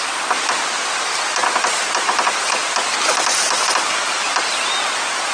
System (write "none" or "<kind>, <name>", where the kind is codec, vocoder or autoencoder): none